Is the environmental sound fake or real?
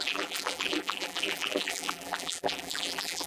fake